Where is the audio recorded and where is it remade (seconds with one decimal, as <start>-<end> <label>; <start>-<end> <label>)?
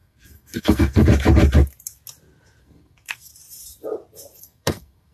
0.0-1.1 remade; 1.1-2.6 recorded; 2.6-3.3 remade; 3.3-4.4 recorded; 4.4-5.1 remade